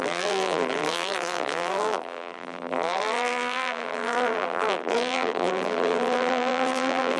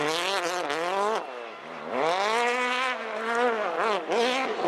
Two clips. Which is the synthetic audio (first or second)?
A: first